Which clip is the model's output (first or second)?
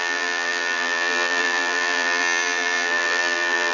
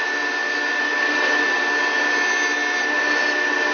first